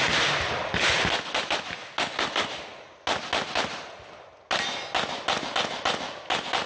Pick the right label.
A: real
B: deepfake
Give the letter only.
A